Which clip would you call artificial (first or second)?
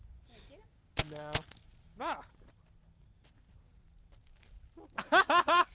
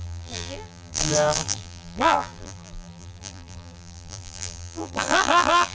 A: second